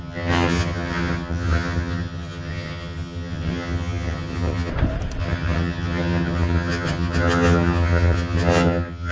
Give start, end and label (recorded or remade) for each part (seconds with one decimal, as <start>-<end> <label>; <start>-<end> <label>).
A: 0.0-4.7 remade; 4.7-5.2 recorded; 5.2-9.1 remade